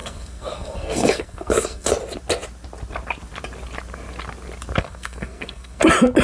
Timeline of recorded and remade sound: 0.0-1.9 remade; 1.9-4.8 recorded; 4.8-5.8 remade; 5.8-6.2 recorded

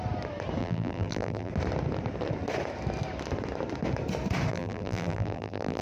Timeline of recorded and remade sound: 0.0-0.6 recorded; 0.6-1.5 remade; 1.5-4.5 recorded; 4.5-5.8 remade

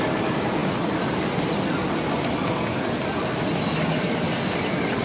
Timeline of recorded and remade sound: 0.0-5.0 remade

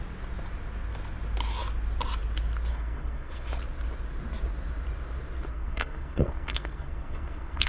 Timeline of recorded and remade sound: 0.0-2.7 recorded; 2.7-3.5 remade; 3.5-5.5 recorded; 5.5-7.7 remade